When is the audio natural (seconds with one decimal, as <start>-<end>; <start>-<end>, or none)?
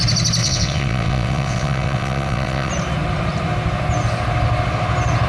0.0-0.4; 2.7-5.3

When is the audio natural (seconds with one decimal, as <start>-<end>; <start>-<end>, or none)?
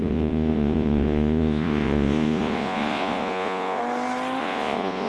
3.8-4.4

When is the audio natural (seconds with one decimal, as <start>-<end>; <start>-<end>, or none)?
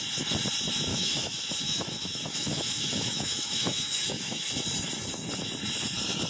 0.0-0.9; 4.5-6.3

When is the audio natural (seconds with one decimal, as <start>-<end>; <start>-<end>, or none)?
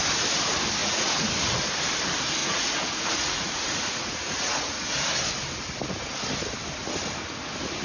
0.0-0.8; 1.3-2.4; 4.9-7.8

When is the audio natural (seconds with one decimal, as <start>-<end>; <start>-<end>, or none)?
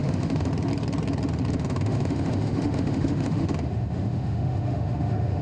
0.5-1.5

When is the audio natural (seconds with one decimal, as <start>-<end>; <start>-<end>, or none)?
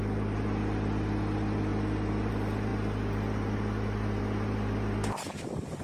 0.0-5.8